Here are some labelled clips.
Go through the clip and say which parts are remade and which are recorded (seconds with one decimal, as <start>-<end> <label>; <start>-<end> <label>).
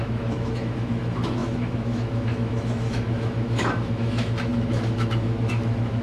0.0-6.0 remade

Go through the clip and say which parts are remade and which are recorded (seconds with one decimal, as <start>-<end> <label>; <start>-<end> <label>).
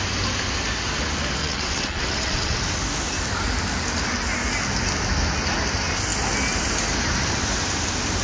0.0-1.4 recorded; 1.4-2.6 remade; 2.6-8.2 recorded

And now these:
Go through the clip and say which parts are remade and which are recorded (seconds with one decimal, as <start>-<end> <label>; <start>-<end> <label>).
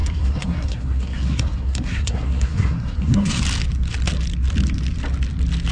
0.0-3.4 remade; 3.4-5.7 recorded